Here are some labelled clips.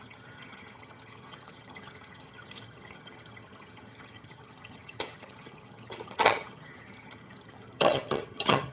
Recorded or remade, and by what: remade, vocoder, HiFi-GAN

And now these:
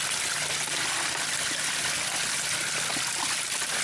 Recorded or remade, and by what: recorded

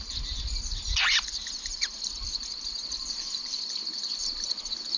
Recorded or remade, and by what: recorded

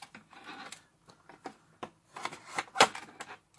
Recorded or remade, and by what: recorded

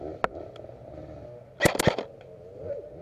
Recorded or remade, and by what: recorded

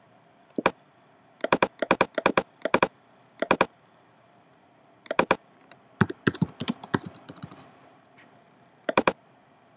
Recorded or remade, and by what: remade, vocoder, BigVGAN v2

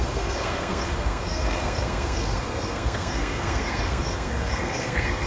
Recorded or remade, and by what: remade, codec, SNAC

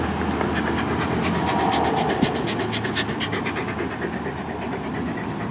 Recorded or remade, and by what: recorded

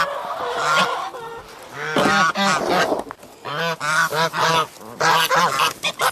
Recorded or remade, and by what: recorded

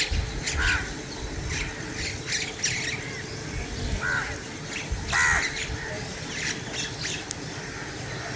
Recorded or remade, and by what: recorded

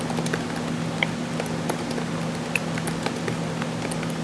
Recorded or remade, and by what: recorded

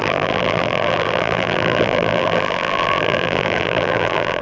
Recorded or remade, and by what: remade, vocoder, BigVGAN v2